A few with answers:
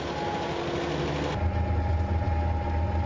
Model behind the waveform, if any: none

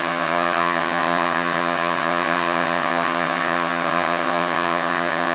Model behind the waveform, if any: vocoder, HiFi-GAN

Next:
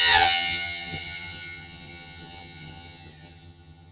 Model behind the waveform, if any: vocoder, HiFi-GAN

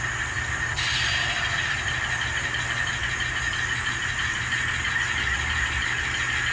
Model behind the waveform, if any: none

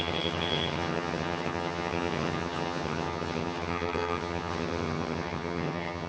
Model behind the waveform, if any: vocoder, HiFi-GAN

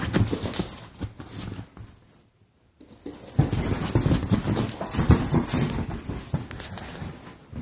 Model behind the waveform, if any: none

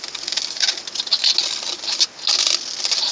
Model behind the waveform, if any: none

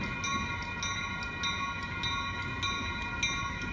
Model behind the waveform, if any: none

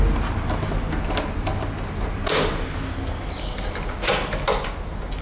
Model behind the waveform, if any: none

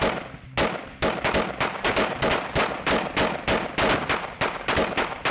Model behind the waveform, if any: none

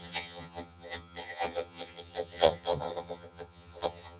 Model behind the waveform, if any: vocoder, HiFi-GAN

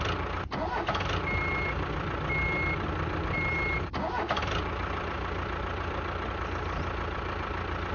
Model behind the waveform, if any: none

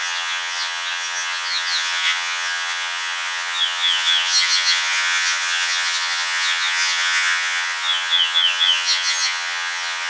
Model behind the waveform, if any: vocoder, HiFi-GAN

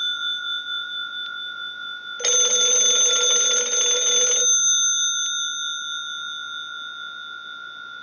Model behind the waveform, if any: none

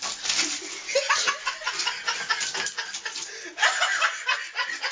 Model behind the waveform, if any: none